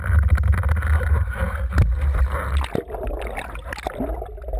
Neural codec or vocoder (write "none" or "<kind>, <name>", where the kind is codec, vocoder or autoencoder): none